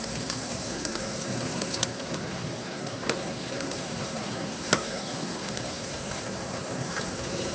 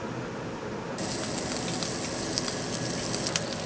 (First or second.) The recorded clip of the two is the second